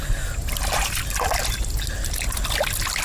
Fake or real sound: real